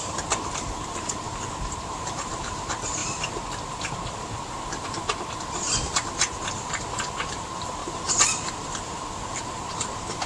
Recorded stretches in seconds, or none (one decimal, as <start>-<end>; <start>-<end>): 3.0-6.5